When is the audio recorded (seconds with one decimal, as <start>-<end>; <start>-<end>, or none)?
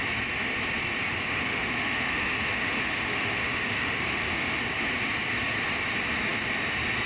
0.0-1.3; 4.6-7.1